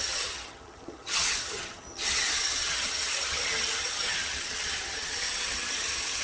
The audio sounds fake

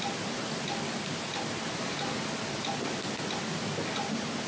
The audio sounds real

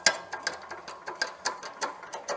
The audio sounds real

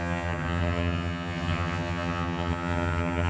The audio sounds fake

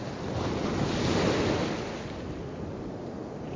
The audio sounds real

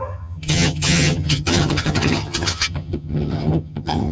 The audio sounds fake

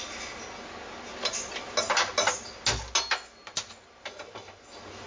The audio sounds real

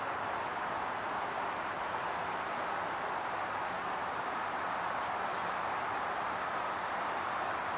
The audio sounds real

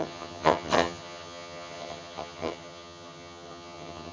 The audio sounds fake